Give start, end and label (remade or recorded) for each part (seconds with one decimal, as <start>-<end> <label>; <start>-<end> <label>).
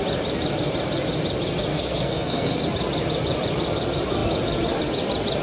0.0-1.7 recorded; 1.7-2.6 remade; 2.6-5.4 recorded